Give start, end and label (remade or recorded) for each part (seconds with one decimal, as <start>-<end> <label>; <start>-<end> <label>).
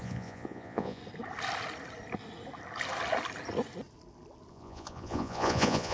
0.0-1.0 remade; 1.0-4.5 recorded; 4.5-5.9 remade